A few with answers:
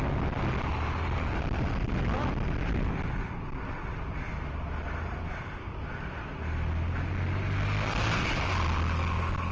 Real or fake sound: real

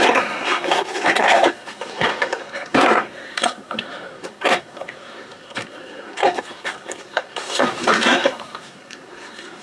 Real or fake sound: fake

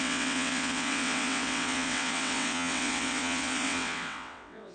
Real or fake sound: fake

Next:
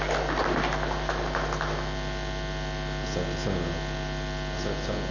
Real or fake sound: real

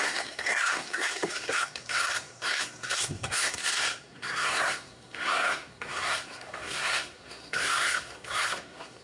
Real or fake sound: fake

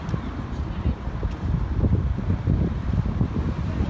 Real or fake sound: fake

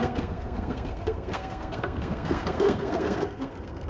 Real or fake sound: fake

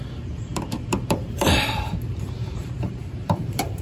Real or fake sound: fake